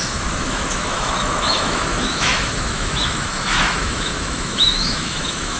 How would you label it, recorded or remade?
remade